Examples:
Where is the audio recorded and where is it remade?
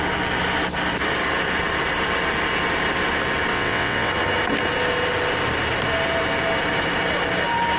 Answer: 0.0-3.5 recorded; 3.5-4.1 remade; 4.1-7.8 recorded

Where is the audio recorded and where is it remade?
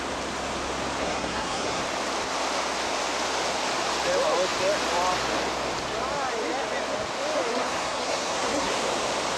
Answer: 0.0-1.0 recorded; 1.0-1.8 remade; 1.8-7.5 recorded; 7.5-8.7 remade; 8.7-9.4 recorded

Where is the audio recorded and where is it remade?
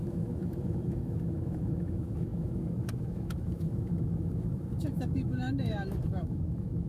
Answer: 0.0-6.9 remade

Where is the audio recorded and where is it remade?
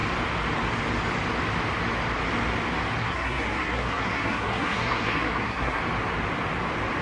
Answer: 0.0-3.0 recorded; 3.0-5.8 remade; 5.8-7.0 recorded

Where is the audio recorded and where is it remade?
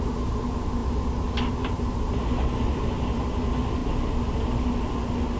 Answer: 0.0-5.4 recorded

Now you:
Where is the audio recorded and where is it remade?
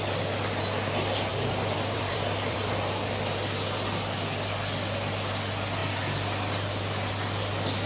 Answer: 0.0-1.3 recorded; 1.3-2.8 remade; 2.8-7.9 recorded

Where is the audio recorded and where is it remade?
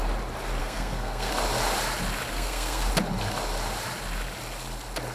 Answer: 0.0-0.6 recorded; 0.6-1.3 remade; 1.3-2.3 recorded; 2.3-2.9 remade; 2.9-5.1 recorded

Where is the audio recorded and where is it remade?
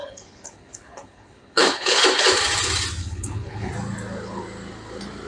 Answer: 0.0-2.0 remade; 2.0-3.0 recorded; 3.0-3.7 remade; 3.7-5.3 recorded